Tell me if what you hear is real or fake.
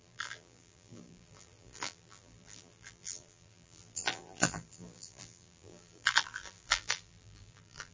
fake